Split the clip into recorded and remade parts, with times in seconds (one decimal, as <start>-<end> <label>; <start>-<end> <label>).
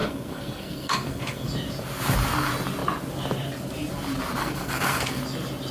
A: 0.0-1.5 remade; 1.5-4.4 recorded; 4.4-5.2 remade; 5.2-5.7 recorded